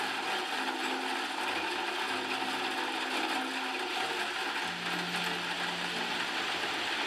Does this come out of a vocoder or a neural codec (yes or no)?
no